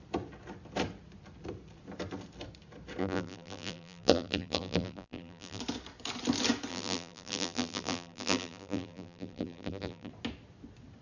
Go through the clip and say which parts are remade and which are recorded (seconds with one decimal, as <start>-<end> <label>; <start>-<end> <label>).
0.0-3.0 recorded; 3.0-5.6 remade; 5.6-6.7 recorded; 6.7-10.1 remade; 10.1-11.0 recorded